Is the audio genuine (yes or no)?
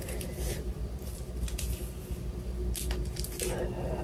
no